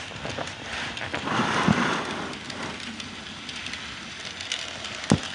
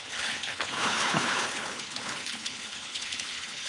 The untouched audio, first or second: first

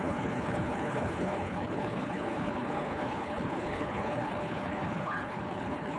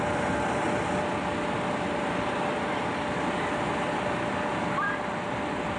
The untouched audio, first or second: second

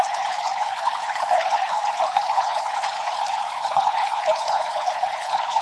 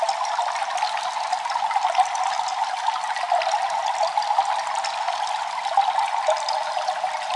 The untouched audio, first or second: second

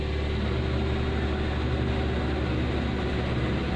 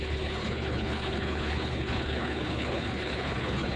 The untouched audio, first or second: first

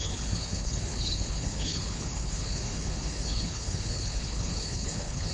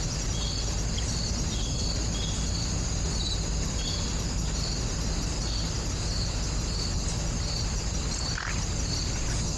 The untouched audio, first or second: second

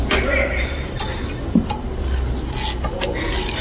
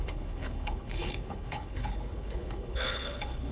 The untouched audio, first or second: first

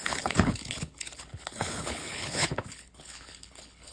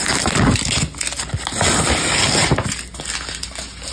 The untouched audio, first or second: second